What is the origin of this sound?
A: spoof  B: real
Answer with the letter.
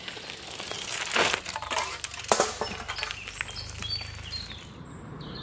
B